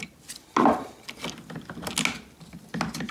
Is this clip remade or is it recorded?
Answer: recorded